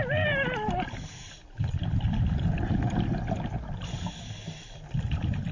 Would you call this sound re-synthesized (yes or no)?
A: no